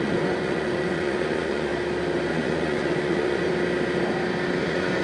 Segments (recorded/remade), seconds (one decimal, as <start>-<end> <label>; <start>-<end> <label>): 0.0-1.7 remade; 1.7-2.3 recorded; 2.3-3.5 remade; 3.5-4.6 recorded; 4.6-5.0 remade